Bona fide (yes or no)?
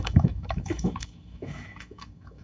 no